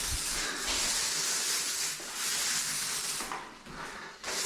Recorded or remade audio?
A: recorded